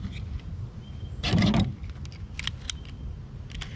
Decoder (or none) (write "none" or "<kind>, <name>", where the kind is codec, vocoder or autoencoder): none